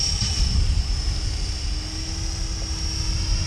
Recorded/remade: recorded